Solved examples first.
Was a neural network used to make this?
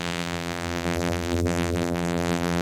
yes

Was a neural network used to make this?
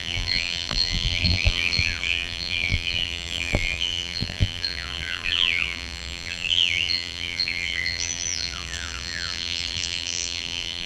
yes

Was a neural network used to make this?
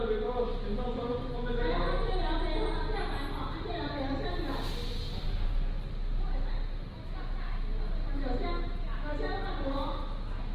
no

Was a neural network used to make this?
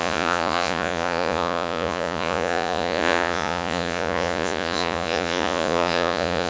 yes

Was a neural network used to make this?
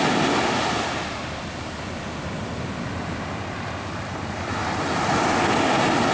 no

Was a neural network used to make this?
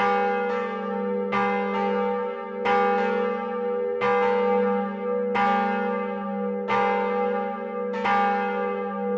no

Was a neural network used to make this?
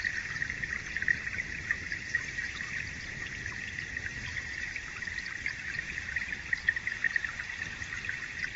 no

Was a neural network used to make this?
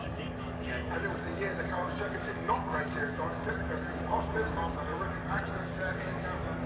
yes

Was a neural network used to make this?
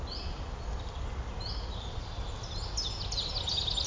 no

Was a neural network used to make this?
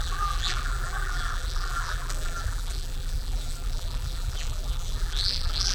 yes